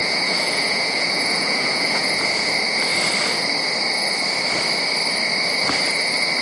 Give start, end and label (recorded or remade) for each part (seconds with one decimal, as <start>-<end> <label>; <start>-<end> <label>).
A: 0.0-2.5 remade; 2.5-6.4 recorded